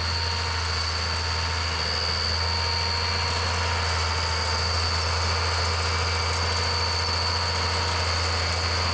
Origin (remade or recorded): recorded